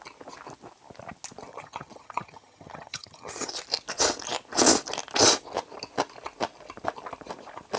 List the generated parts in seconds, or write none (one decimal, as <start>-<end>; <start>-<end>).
1.5-3.5